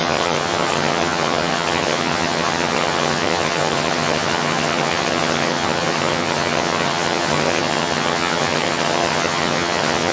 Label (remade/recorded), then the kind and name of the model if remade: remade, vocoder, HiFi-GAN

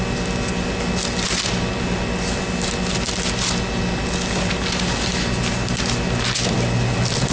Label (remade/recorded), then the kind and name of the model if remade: recorded